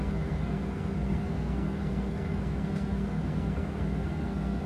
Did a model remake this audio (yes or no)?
yes